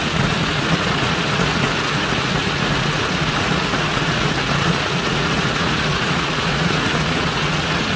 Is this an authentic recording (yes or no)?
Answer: no